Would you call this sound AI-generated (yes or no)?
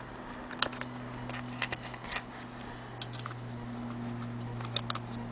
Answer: no